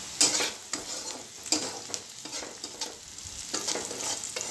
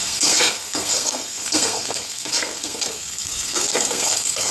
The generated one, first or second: second